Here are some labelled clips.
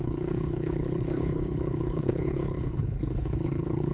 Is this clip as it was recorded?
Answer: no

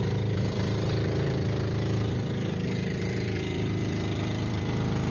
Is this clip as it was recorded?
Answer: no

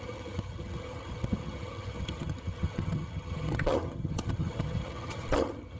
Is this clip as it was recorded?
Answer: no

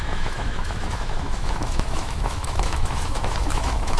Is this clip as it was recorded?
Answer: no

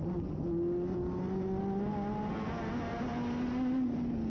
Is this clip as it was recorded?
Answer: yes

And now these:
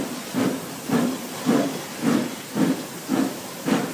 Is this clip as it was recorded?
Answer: yes